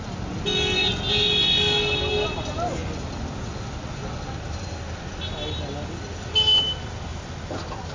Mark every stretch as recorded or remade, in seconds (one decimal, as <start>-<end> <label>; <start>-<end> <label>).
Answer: 0.0-7.9 recorded